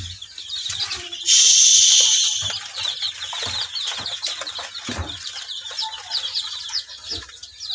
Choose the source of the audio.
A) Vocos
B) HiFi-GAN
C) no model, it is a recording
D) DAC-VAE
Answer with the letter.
C